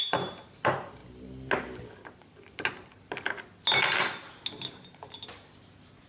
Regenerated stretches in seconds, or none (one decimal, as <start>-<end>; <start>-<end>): none